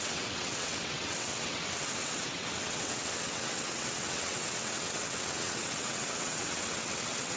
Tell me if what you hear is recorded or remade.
remade